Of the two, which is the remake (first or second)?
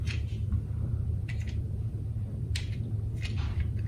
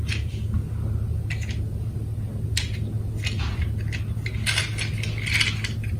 first